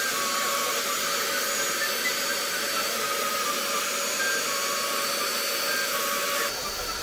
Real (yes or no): yes